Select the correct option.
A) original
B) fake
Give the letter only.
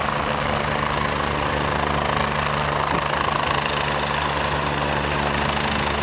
A